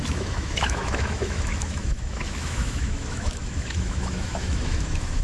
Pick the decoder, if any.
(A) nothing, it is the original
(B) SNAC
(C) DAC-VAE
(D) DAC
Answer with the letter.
C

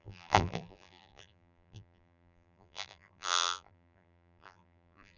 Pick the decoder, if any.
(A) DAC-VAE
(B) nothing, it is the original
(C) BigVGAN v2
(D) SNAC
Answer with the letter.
C